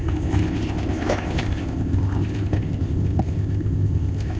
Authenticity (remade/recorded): remade